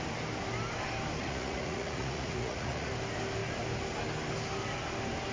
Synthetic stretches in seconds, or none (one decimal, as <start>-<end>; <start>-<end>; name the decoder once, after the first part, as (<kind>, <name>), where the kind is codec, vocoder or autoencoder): 1.2-2.9 (vocoder, Vocos)